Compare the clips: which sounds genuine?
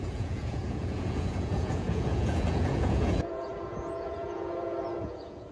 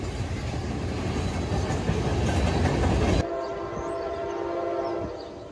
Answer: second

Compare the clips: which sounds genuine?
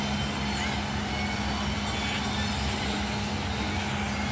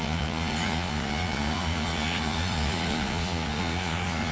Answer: first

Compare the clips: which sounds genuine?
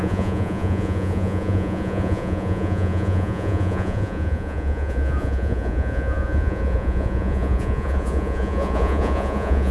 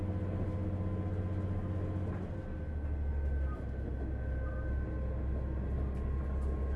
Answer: second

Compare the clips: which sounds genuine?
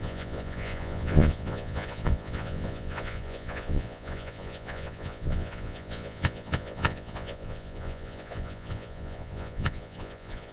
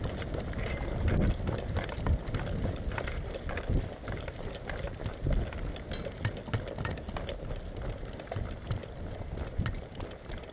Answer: second